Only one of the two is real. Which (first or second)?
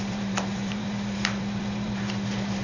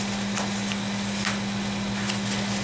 second